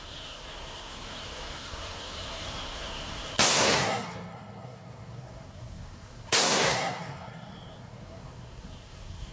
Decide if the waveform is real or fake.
fake